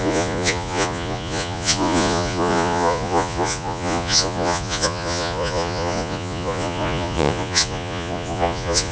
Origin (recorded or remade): remade